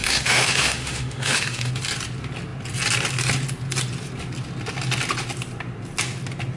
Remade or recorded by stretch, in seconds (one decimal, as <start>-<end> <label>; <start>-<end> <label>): 0.0-1.7 remade; 1.7-6.6 recorded